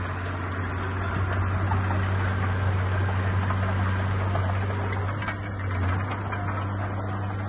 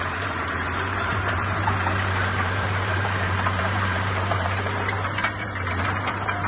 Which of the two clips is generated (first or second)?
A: second